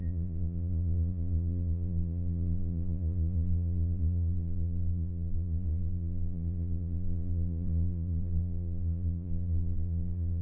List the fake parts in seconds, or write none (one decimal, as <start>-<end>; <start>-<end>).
0.0-10.4